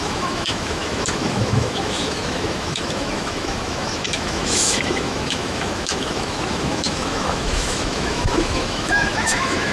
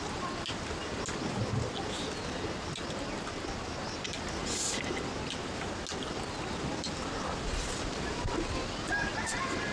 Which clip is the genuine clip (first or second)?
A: second